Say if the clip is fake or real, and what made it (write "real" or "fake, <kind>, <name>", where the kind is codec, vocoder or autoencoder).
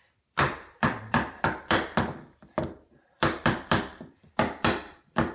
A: fake, vocoder, BigVGAN v2